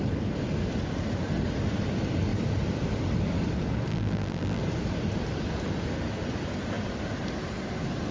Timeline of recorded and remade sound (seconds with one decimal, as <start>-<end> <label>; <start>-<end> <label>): 0.0-3.9 recorded; 3.9-4.6 remade; 4.6-8.1 recorded